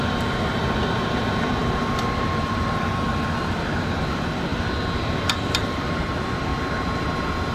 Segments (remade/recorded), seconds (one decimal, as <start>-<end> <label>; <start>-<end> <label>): 0.0-6.5 remade; 6.5-7.5 recorded